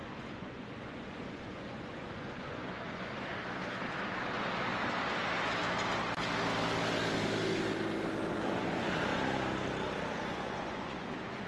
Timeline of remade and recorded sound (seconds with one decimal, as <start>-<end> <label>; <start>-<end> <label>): 0.0-3.3 remade; 3.3-8.3 recorded; 8.3-9.1 remade; 9.1-10.3 recorded; 10.3-11.5 remade